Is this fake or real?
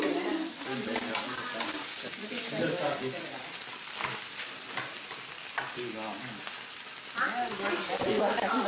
real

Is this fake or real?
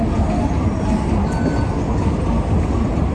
real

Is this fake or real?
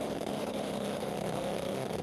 fake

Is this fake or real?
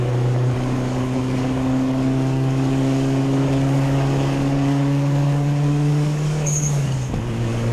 fake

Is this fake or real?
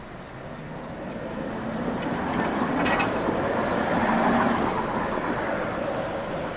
real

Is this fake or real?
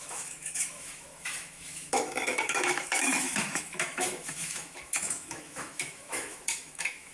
fake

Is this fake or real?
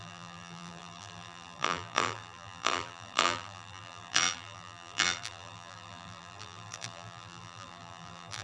fake